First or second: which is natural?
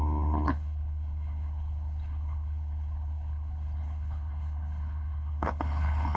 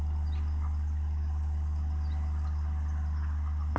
second